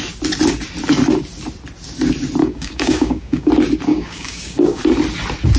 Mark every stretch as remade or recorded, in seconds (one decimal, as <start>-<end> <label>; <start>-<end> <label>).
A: 0.0-2.4 recorded; 2.4-3.5 remade; 3.5-3.9 recorded; 3.9-4.8 remade; 4.8-5.6 recorded